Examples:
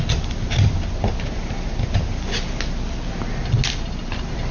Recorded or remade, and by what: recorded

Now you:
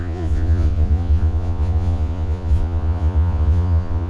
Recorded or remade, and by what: remade, vocoder, Vocos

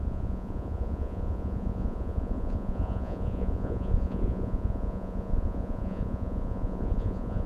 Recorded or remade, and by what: remade, vocoder, Vocos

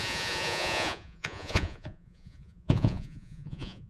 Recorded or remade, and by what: remade, vocoder, Vocos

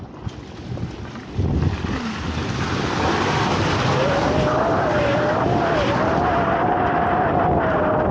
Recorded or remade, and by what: recorded